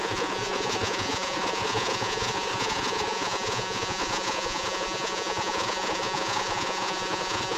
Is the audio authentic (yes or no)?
no